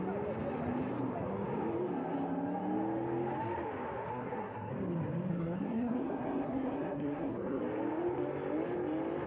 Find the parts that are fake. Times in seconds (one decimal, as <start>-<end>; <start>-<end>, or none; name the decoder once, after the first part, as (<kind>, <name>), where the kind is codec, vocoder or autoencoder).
4.1-4.7 (codec, SNAC); 5.3-7.6